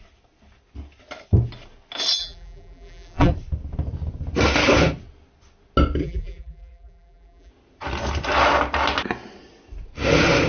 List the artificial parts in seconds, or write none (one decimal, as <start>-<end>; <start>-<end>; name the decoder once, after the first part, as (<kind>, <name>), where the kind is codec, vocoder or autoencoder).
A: 2.2-3.3 (vocoder, BigVGAN v2); 6.0-7.5